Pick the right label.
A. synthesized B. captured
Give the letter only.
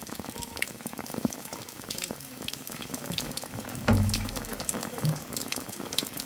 A